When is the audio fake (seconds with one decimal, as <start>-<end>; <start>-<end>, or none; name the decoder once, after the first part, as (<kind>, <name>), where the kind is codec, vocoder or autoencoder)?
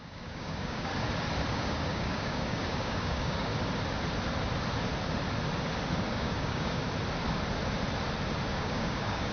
0.0-0.9 (codec, DAC); 1.5-3.5; 6.1-6.8; 8.5-9.3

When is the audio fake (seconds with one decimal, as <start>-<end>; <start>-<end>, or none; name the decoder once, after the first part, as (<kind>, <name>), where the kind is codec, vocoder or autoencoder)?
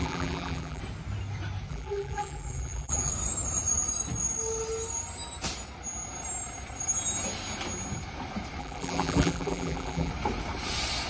0.0-0.8 (vocoder, BigVGAN v2); 1.7-3.1; 8.6-10.1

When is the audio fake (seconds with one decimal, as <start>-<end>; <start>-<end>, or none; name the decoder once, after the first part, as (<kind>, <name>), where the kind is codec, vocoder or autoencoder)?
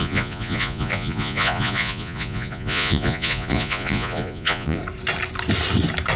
0.0-4.8 (vocoder, Vocos)